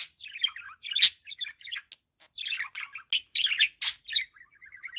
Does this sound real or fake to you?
real